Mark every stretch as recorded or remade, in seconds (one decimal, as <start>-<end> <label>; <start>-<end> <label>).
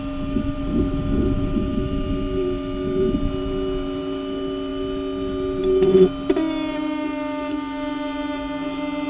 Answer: 0.0-9.1 recorded